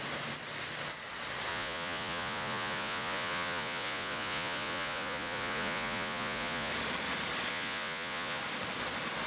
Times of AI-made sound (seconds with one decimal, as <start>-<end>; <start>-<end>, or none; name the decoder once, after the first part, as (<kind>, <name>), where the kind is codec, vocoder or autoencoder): 1.5-6.7 (vocoder, Vocos); 7.5-8.4